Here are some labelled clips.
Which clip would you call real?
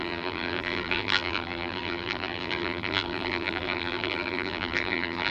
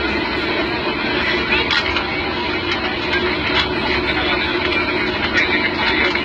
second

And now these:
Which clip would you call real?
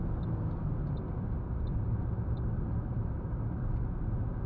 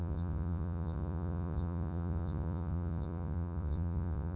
first